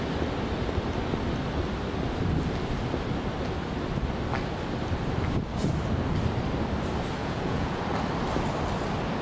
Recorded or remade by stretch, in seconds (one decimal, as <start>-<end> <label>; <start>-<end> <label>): 0.0-7.2 recorded; 7.2-7.8 remade; 7.8-9.2 recorded